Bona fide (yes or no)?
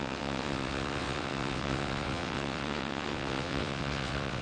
no